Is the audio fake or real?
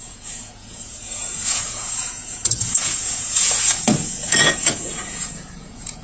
fake